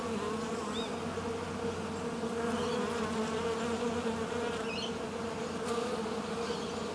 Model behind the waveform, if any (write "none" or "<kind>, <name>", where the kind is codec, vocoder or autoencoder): none